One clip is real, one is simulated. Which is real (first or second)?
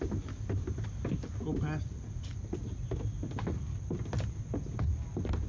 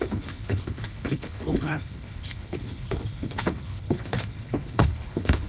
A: first